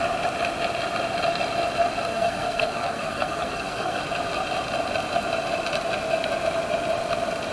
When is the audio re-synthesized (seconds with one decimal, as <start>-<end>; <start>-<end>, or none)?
2.1-4.0